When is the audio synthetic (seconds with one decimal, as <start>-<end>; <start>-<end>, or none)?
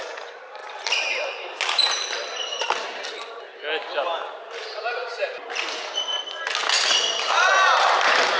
0.6-2.7; 4.1-5.9